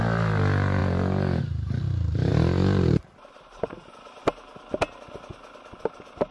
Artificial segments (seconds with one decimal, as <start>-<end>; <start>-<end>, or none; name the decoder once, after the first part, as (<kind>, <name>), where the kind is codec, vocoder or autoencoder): none